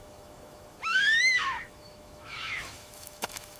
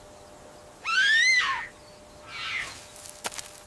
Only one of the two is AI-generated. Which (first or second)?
first